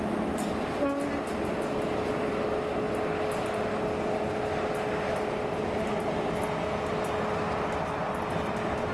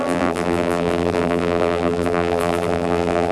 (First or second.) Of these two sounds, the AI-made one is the second